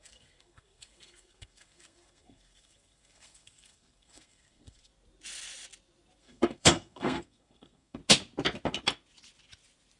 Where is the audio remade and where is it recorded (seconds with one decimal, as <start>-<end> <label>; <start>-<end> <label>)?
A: 0.0-4.9 remade; 4.9-6.2 recorded; 6.2-8.0 remade; 8.0-10.0 recorded